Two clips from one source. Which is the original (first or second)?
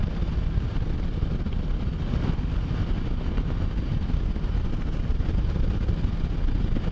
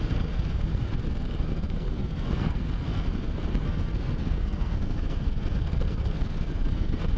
first